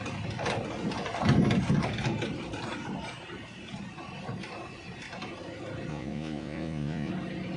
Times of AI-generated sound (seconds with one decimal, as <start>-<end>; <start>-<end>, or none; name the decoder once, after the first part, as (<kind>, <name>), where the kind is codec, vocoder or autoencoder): 5.9-7.1 (vocoder, Vocos)